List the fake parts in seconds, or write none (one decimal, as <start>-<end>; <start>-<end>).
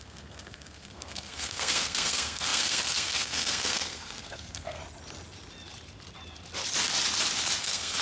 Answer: 0.0-4.8; 7.6-8.0